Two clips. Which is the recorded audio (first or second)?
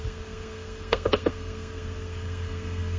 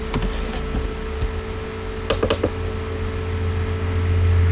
second